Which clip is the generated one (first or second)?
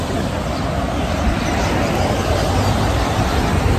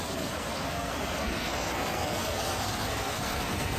second